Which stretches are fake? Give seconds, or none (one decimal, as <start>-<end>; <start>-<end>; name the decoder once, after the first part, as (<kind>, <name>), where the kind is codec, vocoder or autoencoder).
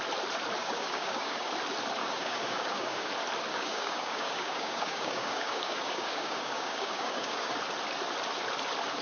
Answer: 0.6-1.5 (codec, DAC); 2.0-3.1; 3.5-7.5